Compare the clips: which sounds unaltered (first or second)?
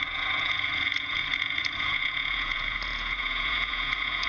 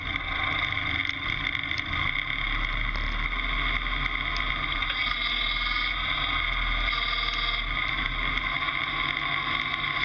second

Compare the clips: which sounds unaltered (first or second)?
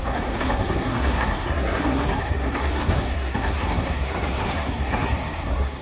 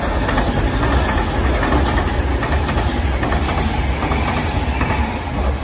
second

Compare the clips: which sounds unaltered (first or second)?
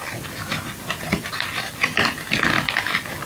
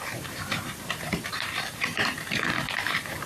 first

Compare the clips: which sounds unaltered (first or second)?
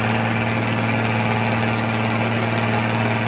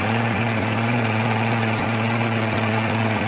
first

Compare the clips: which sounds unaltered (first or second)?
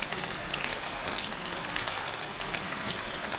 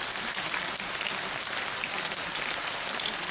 second